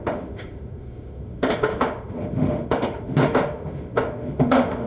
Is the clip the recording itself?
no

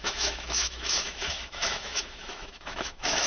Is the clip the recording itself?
no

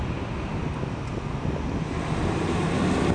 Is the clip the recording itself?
yes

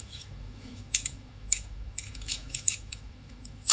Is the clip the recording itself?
no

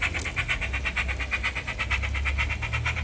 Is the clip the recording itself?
yes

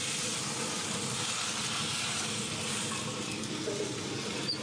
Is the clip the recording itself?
yes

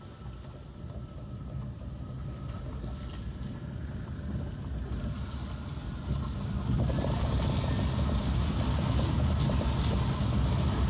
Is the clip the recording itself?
yes